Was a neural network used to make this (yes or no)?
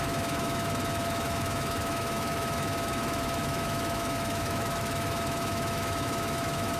yes